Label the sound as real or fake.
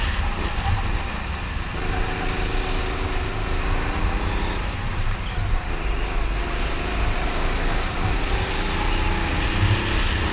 real